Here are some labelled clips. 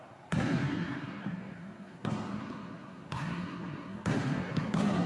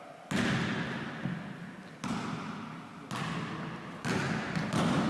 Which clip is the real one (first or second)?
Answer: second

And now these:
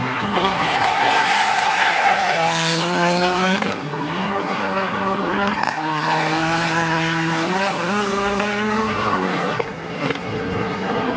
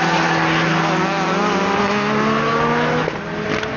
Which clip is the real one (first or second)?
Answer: second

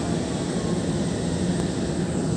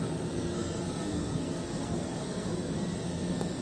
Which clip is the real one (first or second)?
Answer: first